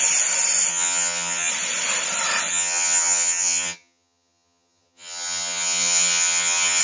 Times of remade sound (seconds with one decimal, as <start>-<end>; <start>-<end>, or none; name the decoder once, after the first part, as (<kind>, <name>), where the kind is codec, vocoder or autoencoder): 0.7-1.5 (vocoder, HiFi-GAN); 2.5-6.8